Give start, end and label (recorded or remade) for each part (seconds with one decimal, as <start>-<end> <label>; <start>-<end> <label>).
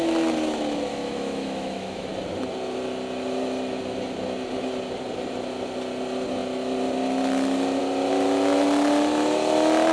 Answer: 0.0-0.9 recorded; 0.9-2.1 remade; 2.1-9.9 recorded